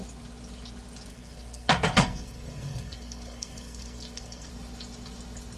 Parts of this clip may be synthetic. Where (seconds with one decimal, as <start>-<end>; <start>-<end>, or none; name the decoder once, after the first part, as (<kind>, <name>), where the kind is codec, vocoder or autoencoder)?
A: 1.1-4.5 (codec, SNAC)